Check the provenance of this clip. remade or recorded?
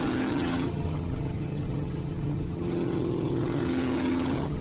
remade